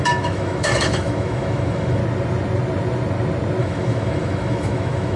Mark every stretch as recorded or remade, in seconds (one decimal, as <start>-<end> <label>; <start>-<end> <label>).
0.0-2.0 remade; 2.0-3.6 recorded; 3.6-5.2 remade